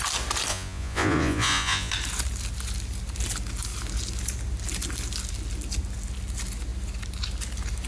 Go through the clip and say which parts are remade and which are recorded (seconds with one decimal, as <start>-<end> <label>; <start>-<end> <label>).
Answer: 0.0-0.5 recorded; 0.5-1.9 remade; 1.9-7.9 recorded